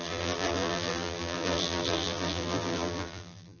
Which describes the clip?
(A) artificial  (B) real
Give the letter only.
A